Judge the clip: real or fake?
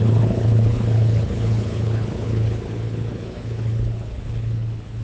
fake